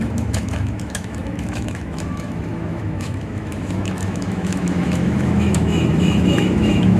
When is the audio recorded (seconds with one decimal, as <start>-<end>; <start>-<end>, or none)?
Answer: none